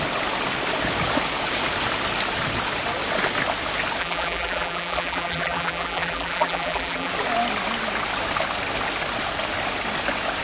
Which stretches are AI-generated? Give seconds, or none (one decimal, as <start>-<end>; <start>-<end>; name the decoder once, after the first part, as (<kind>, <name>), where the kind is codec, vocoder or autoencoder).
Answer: 4.0-7.1 (vocoder, BigVGAN v2)